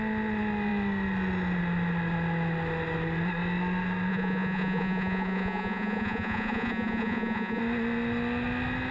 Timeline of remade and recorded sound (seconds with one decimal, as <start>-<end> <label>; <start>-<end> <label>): 0.0-4.1 recorded; 4.1-7.6 remade; 7.6-8.9 recorded